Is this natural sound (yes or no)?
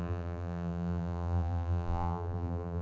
no